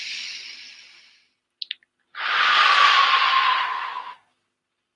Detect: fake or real real